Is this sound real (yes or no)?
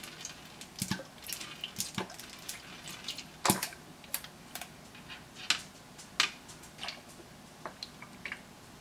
yes